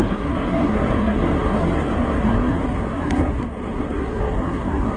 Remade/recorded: remade